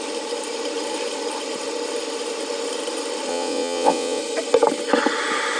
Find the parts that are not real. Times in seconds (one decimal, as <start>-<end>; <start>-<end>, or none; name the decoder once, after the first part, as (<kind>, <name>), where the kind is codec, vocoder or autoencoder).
3.3-4.2 (vocoder, WaveNeXt)